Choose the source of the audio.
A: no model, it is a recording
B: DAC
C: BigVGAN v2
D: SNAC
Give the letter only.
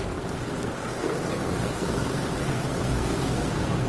D